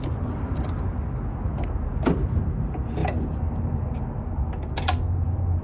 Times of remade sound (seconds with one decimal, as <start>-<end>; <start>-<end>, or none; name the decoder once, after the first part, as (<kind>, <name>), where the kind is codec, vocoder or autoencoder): none